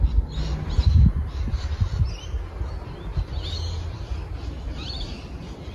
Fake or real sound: real